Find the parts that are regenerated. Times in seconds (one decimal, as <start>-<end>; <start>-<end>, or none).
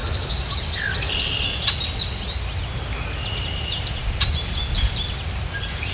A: none